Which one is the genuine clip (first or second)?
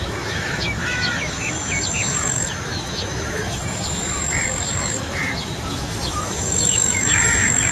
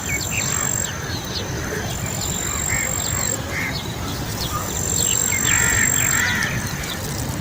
second